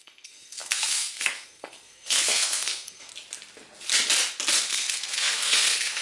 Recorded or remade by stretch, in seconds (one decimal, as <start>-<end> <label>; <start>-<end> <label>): 0.0-3.1 remade; 3.1-4.6 recorded; 4.6-6.0 remade